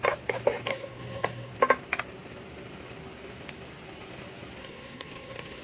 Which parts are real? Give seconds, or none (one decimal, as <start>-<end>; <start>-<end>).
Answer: 0.0-0.7; 1.5-4.6